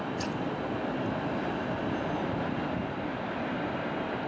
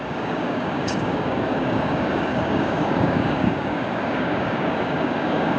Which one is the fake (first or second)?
second